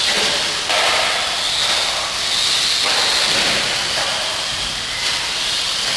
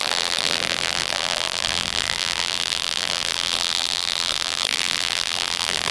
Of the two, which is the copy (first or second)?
second